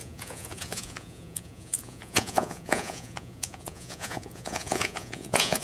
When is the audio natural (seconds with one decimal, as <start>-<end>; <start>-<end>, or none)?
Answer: none